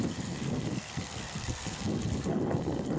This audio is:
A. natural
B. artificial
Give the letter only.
B